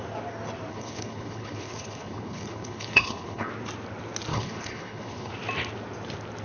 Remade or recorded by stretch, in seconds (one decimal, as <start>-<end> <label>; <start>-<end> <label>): 0.0-0.7 recorded; 0.7-3.5 remade; 3.5-4.3 recorded; 4.3-5.3 remade; 5.3-6.4 recorded